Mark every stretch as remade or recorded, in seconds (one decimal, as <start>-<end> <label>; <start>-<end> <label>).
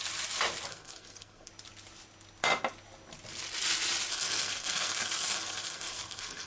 0.0-0.7 recorded; 0.7-1.5 remade; 1.5-4.1 recorded; 4.1-6.5 remade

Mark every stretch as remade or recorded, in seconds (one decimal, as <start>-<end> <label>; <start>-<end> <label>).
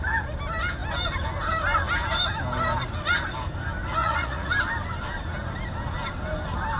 0.0-4.0 recorded; 4.0-4.5 remade; 4.5-6.8 recorded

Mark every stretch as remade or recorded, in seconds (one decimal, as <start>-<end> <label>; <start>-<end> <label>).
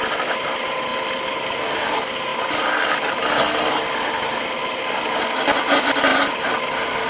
0.0-0.9 recorded; 0.9-1.9 remade; 1.9-7.1 recorded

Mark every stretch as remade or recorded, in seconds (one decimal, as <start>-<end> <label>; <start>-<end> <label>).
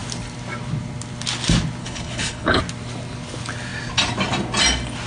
0.0-1.8 recorded; 1.8-2.6 remade; 2.6-5.1 recorded